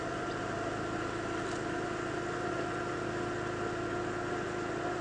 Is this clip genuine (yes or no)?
yes